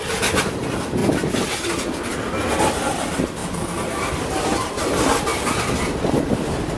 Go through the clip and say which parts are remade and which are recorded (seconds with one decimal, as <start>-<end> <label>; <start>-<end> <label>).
0.0-6.8 recorded